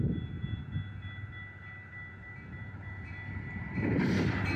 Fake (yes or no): no